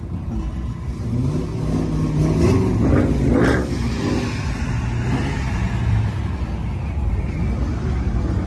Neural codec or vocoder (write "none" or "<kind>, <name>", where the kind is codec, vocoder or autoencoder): none